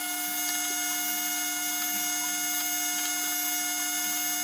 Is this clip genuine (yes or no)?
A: yes